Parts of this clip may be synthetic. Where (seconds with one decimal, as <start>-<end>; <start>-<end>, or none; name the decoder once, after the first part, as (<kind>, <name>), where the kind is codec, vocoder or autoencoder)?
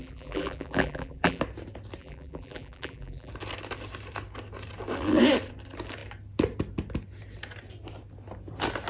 0.0-1.4 (vocoder, BigVGAN v2); 2.0-3.3